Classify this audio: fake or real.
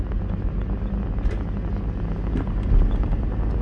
real